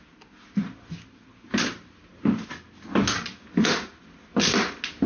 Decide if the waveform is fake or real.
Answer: real